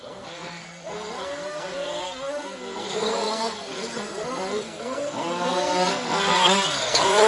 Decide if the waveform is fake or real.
fake